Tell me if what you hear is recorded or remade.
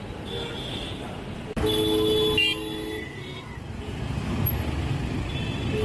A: recorded